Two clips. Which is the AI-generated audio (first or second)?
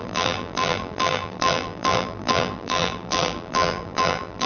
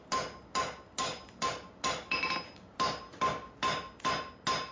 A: first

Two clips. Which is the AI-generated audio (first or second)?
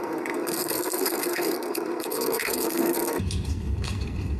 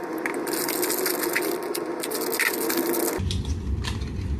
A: first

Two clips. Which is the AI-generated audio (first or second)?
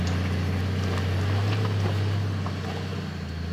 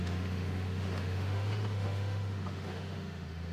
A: second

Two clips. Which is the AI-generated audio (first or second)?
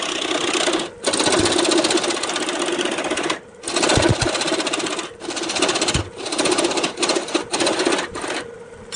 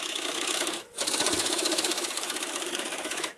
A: second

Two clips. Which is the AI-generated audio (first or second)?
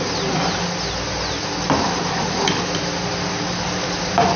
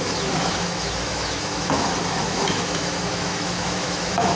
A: second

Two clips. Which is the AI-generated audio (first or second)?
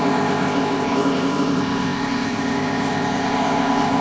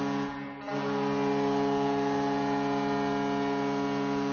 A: first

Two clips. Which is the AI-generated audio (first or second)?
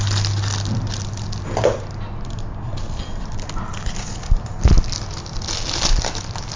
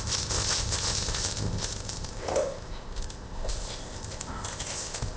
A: second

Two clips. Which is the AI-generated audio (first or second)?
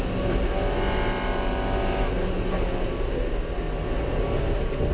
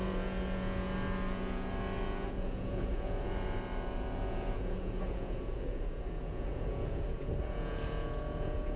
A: second